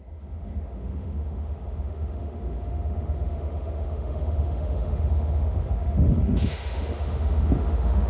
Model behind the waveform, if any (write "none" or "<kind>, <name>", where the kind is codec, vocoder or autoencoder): autoencoder, DAC-VAE